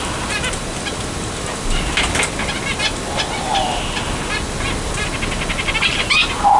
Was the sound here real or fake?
real